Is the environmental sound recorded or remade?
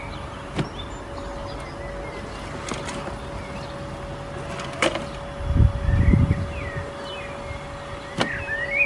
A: recorded